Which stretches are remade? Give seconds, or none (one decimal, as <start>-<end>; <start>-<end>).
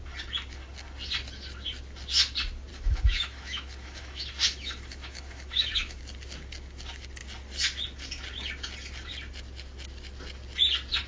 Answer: 2.7-6.0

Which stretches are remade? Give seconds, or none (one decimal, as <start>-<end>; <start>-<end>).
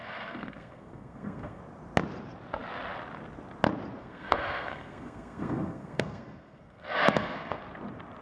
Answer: 0.0-1.6; 4.0-7.6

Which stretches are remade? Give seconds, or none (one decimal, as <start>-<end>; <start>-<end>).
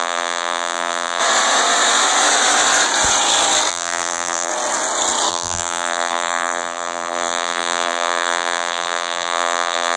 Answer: 0.0-1.2; 3.7-4.5; 5.3-10.0